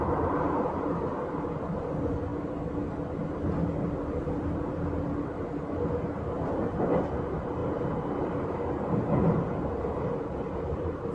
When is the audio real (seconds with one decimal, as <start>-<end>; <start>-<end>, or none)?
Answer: 0.0-11.1